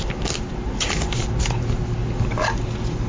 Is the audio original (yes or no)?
yes